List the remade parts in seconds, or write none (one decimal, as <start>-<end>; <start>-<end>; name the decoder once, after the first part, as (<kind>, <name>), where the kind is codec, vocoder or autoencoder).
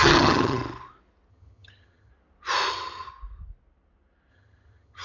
0.0-0.6 (vocoder, HiFi-GAN); 1.3-2.1; 2.7-3.1; 4.3-5.0